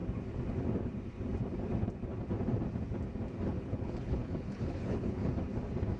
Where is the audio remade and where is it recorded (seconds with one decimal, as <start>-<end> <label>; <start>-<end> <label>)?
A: 0.0-3.6 recorded; 3.6-5.2 remade; 5.2-6.0 recorded